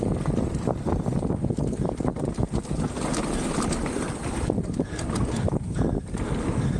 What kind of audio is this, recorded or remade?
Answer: recorded